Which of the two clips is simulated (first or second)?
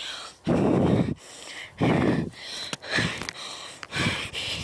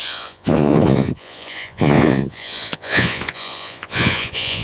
second